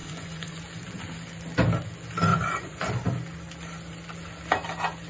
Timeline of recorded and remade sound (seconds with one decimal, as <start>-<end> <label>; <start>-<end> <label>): 0.0-0.6 remade; 0.6-2.3 recorded; 2.3-2.9 remade; 2.9-5.1 recorded